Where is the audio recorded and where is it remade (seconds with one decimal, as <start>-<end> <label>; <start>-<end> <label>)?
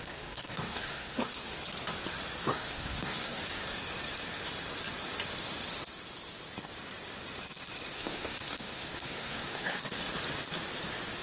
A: 0.0-1.6 remade; 1.6-2.4 recorded; 2.4-3.4 remade; 3.4-7.9 recorded; 7.9-9.8 remade; 9.8-11.2 recorded